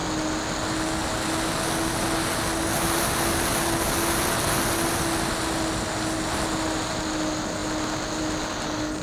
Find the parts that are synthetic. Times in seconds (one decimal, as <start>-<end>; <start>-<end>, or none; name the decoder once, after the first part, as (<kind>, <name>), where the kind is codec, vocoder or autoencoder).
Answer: none